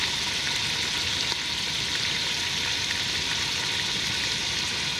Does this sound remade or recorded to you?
recorded